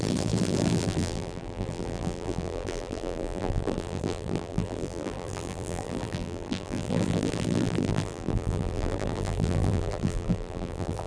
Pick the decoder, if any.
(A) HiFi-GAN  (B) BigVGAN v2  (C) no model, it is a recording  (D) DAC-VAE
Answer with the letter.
B